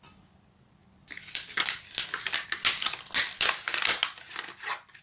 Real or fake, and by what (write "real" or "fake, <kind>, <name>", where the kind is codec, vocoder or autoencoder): real